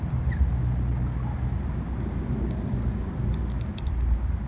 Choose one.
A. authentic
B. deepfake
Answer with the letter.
A